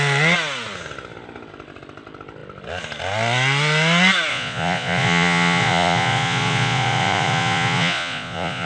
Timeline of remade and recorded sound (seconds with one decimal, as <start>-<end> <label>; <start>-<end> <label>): 0.0-4.3 recorded; 4.3-8.7 remade